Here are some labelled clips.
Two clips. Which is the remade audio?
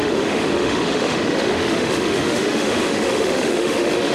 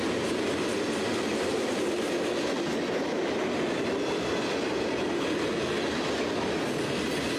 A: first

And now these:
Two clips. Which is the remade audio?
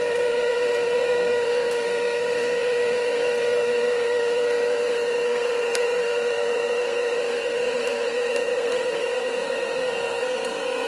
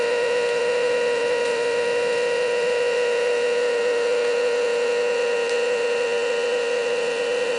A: first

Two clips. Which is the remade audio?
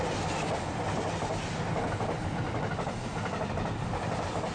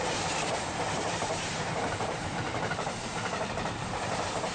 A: second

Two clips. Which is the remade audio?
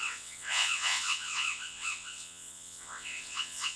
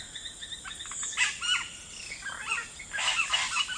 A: first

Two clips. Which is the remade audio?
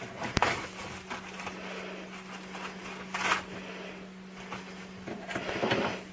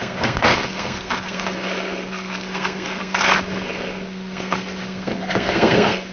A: second